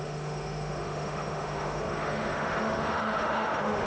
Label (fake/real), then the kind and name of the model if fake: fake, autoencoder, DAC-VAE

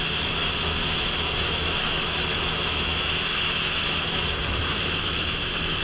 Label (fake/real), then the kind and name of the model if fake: fake, autoencoder, DAC-VAE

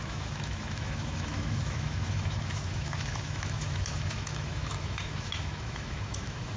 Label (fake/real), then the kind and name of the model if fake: fake, autoencoder, DAC-VAE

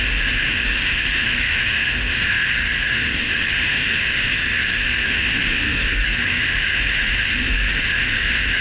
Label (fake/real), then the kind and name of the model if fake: fake, autoencoder, DAC-VAE